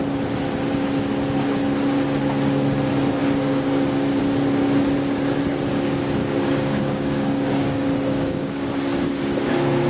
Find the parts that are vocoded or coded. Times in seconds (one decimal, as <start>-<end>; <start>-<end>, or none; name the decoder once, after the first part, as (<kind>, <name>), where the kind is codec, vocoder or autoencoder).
3.2-4.2 (codec, DAC); 6.2-8.7